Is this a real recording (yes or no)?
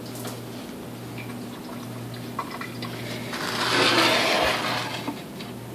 yes